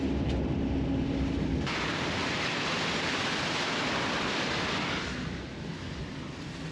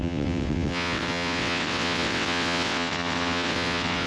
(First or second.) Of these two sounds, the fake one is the second